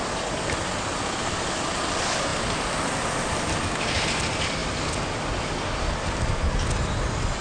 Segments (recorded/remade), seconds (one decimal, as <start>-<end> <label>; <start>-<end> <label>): 0.0-7.4 recorded